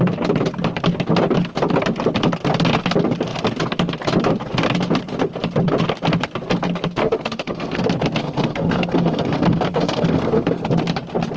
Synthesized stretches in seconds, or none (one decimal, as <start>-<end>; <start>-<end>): 7.0-7.8; 8.2-10.7